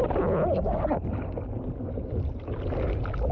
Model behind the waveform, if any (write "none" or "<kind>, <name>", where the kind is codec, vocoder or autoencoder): none